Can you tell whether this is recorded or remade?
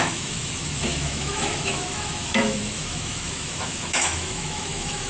remade